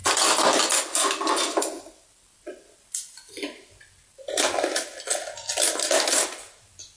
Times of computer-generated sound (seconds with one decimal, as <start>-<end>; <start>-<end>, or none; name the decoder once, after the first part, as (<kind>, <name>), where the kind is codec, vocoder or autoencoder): none